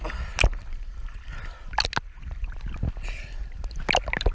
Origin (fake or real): real